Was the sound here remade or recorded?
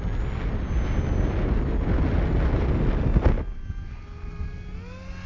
recorded